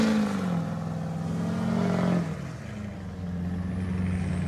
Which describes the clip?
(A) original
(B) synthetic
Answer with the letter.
A